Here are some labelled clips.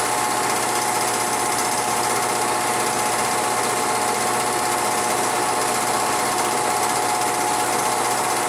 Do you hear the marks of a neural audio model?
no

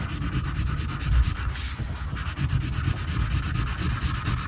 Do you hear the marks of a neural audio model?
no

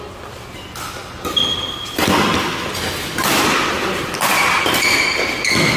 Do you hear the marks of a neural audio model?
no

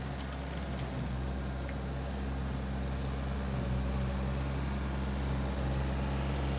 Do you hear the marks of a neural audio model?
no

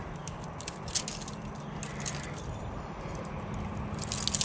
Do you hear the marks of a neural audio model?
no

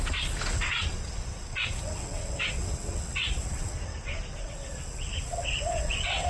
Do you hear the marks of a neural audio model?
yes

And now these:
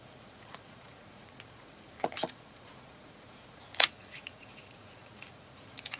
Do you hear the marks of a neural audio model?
yes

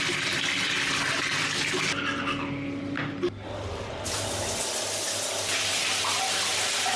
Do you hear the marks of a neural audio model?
no